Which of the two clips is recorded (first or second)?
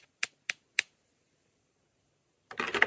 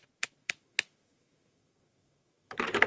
first